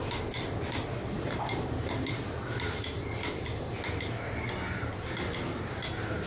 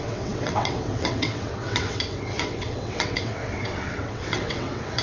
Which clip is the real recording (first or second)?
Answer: first